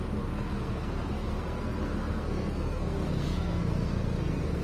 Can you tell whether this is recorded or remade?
remade